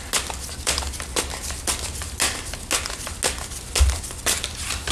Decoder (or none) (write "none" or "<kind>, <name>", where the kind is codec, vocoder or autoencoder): none